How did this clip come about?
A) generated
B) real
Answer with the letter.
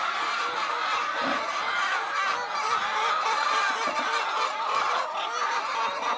B